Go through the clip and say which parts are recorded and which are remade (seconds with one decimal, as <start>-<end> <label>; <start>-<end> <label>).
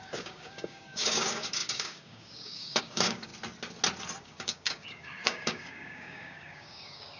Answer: 0.0-3.3 remade; 3.3-4.2 recorded; 4.2-7.2 remade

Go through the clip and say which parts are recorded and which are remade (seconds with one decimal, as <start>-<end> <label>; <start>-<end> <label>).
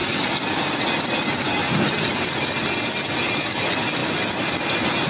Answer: 0.0-5.1 recorded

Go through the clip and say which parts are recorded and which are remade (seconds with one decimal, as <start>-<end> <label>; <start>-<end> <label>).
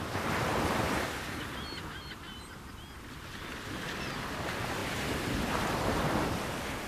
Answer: 0.0-6.9 recorded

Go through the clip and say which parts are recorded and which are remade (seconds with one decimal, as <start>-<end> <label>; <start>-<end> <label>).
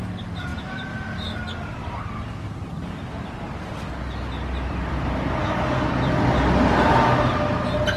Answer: 0.0-5.4 recorded; 5.4-5.9 remade; 5.9-8.0 recorded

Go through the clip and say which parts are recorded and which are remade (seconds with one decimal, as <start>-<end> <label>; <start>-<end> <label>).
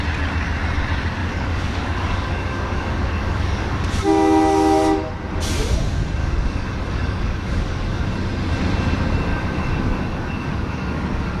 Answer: 0.0-1.2 recorded; 1.2-4.0 remade; 4.0-6.2 recorded; 6.2-8.1 remade; 8.1-9.3 recorded; 9.3-11.4 remade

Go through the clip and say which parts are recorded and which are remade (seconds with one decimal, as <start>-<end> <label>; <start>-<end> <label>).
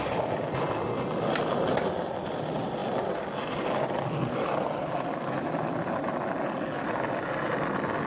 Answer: 0.0-8.1 recorded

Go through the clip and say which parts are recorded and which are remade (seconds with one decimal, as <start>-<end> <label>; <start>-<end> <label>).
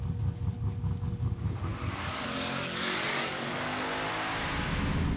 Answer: 0.0-1.7 recorded; 1.7-4.1 remade; 4.1-5.2 recorded